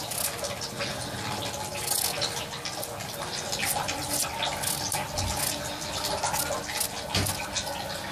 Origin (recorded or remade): recorded